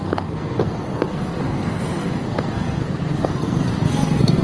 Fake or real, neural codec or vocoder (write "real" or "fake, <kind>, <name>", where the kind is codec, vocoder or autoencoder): fake, codec, SNAC